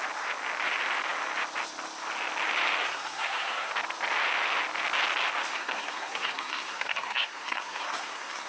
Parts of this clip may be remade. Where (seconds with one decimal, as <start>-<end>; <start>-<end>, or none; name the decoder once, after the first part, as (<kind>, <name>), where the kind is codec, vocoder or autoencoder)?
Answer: 2.8-3.7 (codec, SNAC); 5.5-8.5